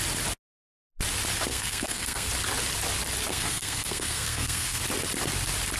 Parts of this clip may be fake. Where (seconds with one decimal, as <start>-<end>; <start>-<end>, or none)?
1.5-2.3; 3.3-4.8